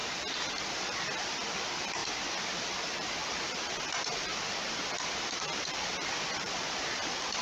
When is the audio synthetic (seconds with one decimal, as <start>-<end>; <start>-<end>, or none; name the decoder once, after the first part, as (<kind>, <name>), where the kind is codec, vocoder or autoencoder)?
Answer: 0.7-7.4 (vocoder, BigVGAN v2)